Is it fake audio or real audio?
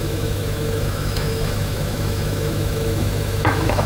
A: fake